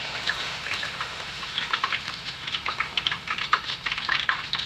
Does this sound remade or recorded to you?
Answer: remade